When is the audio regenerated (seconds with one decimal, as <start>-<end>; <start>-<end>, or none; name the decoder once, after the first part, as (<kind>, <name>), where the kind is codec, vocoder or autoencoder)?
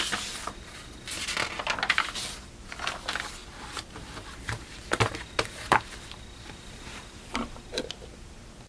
3.4-7.9 (vocoder, BigVGAN v2)